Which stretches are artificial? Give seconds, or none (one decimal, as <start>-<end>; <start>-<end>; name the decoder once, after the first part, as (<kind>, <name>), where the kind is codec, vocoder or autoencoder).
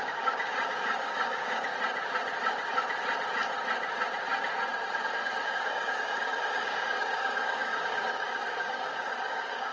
0.0-1.7 (codec, DAC); 5.5-9.7